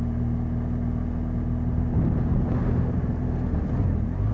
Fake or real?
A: real